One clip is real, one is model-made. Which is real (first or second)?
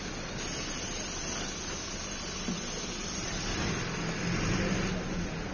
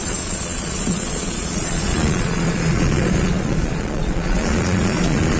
first